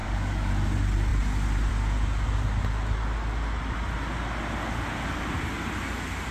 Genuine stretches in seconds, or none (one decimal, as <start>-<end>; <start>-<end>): 0.5-6.3